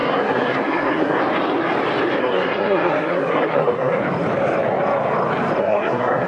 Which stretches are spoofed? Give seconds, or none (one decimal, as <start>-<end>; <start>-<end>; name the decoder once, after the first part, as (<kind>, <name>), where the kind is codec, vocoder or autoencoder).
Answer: 0.0-1.2 (codec, SNAC); 2.2-4.0; 5.6-6.3